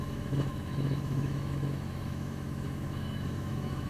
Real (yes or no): no